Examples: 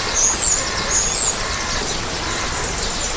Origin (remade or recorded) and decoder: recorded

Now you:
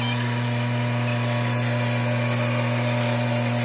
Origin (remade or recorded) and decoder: recorded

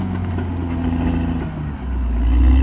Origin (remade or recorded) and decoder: recorded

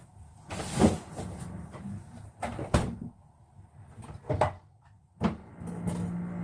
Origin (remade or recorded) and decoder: recorded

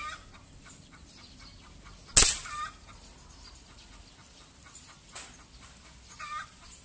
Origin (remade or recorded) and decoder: recorded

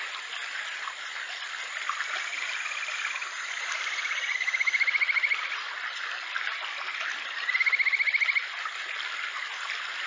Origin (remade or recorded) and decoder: recorded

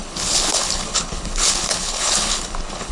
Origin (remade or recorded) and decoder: remade, codec, HILCodec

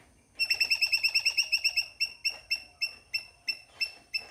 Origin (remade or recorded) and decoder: recorded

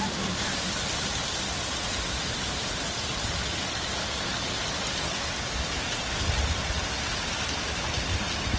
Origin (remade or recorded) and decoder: recorded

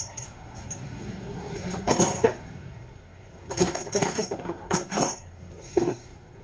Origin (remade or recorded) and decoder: remade, codec, SNAC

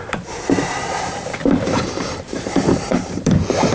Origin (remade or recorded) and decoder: remade, vocoder, BigVGAN v2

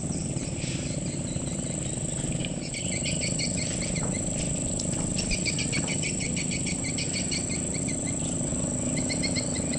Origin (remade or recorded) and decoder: recorded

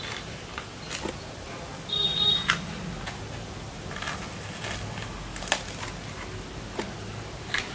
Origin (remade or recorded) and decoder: recorded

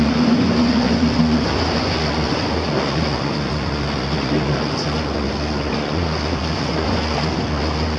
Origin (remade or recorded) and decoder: remade, vocoder, Vocos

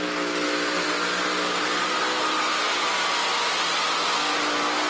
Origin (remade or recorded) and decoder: recorded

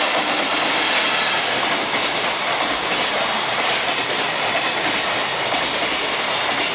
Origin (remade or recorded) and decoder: recorded